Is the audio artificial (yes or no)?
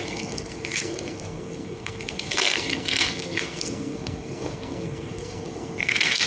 yes